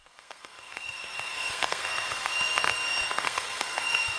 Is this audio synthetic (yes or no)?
yes